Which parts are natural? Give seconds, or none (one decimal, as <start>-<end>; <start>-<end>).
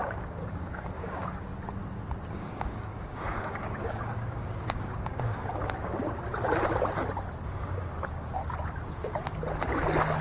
1.5-2.3; 5.9-7.6; 8.4-10.2